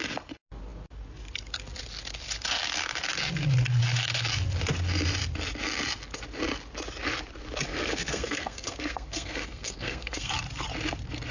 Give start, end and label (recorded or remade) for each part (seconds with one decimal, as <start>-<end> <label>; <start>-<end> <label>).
0.0-7.7 recorded; 7.7-10.3 remade; 10.3-11.3 recorded